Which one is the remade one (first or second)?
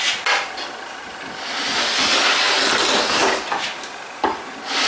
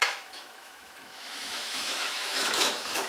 second